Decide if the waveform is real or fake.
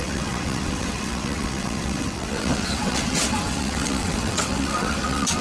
fake